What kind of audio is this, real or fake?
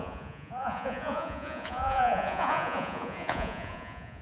fake